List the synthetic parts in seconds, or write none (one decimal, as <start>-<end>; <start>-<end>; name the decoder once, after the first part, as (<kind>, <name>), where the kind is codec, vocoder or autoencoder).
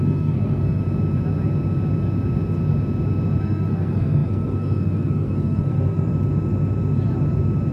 0.0-0.8 (codec, SNAC); 3.4-6.1